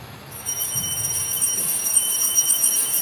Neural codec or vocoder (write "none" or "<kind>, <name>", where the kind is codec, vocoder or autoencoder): autoencoder, DAC-VAE